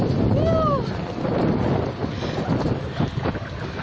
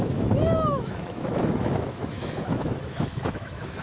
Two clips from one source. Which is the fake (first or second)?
second